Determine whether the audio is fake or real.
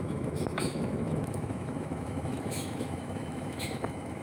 fake